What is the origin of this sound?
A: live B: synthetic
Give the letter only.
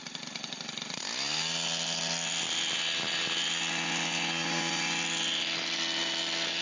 A